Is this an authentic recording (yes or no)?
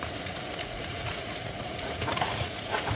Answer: no